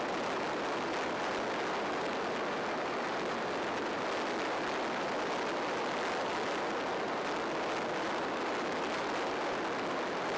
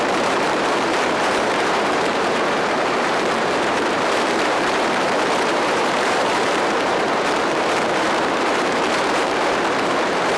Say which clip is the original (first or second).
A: first